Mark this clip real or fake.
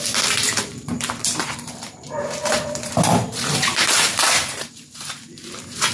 fake